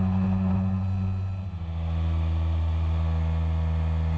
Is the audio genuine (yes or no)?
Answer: yes